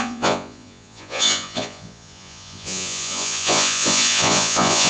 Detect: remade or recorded remade